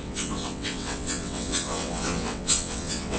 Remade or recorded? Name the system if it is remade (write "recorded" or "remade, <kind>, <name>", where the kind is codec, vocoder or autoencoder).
remade, vocoder, WaveNeXt